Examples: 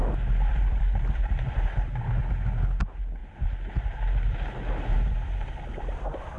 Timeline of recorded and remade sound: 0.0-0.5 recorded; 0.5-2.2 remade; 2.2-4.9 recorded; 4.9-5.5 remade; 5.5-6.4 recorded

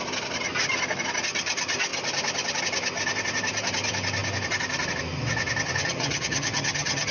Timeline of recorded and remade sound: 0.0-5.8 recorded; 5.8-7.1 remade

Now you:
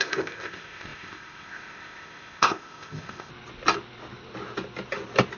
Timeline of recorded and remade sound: 0.0-3.3 remade; 3.3-5.4 recorded

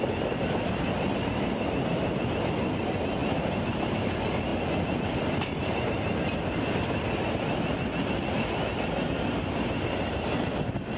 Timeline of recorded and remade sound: 0.0-3.2 recorded; 3.2-3.8 remade; 3.8-11.0 recorded

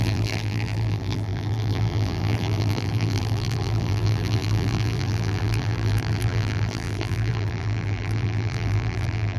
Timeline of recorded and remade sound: 0.0-9.4 remade

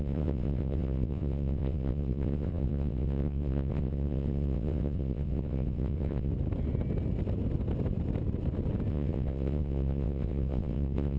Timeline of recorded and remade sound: 0.0-6.3 remade; 6.3-8.9 recorded; 8.9-11.2 remade